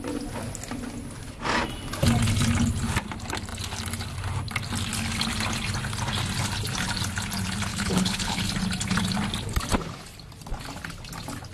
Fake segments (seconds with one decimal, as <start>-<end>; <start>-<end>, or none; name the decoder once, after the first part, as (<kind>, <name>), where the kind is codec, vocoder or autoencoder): 7.7-8.4 (codec, HILCodec)